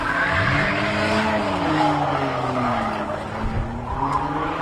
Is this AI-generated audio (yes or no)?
yes